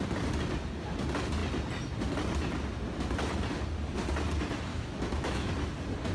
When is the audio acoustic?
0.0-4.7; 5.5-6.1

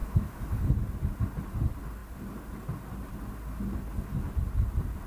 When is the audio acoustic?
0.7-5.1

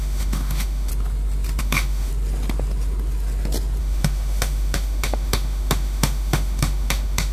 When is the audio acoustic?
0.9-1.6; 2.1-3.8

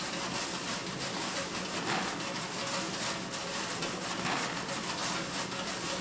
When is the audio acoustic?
0.0-6.0